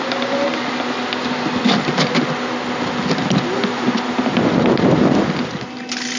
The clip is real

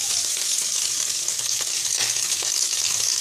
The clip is fake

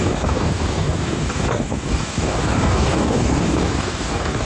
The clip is fake